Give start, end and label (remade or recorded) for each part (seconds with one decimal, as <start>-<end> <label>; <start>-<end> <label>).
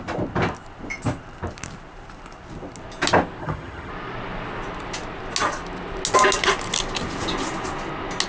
0.0-3.4 recorded; 3.4-3.9 remade; 3.9-8.3 recorded